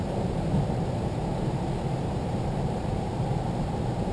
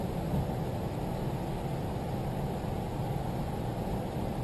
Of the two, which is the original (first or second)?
second